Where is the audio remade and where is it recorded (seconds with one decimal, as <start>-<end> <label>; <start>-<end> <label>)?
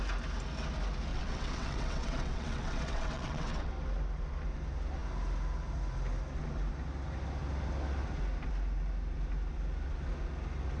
0.0-1.1 recorded; 1.1-3.7 remade; 3.7-10.8 recorded